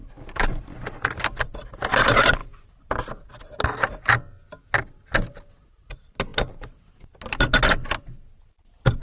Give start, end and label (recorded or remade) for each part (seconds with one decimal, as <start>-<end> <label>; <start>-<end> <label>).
0.0-9.0 recorded